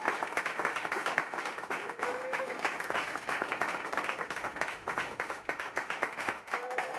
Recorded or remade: remade